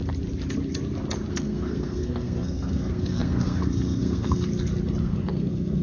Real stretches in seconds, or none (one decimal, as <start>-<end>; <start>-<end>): 0.0-1.3; 4.5-5.0